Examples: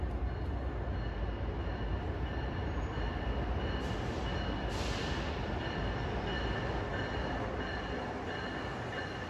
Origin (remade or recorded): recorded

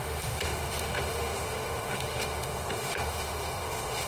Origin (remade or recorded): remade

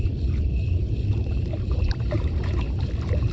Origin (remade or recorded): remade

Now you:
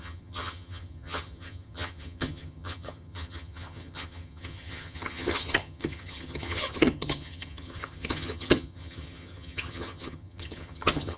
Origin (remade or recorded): remade